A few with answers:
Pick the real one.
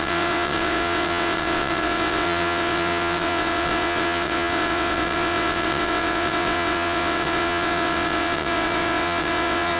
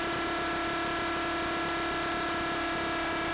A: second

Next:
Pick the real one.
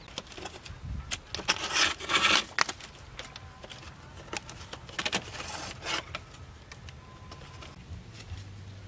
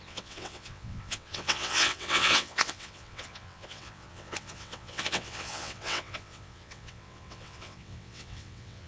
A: first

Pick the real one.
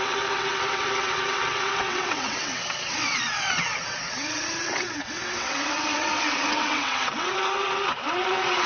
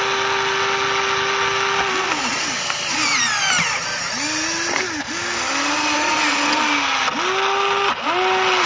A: second